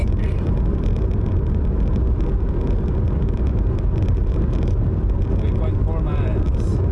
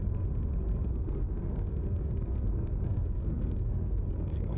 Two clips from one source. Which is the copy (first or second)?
second